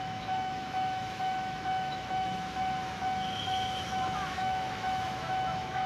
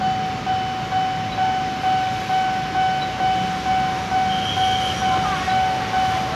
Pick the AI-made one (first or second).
first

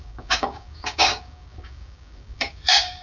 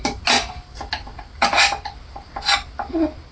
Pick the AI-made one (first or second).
first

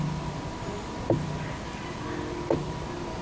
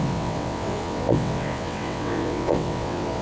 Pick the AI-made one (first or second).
second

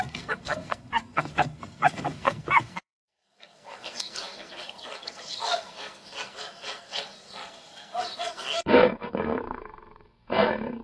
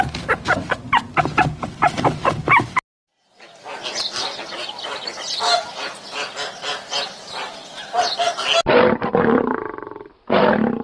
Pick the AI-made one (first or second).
first